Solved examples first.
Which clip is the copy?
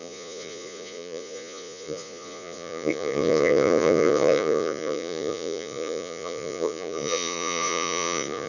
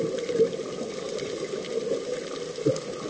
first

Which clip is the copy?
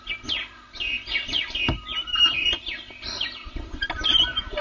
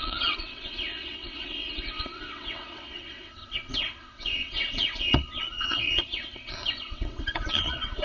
second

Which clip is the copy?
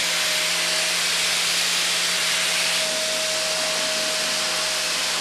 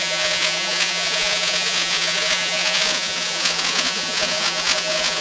second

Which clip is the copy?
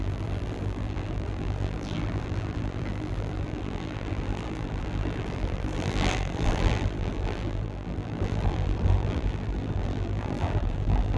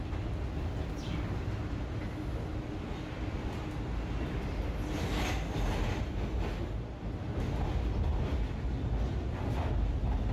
first